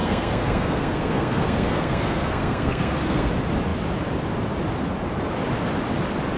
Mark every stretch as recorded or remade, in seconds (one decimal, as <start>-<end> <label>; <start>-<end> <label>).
0.0-3.3 remade; 3.3-6.4 recorded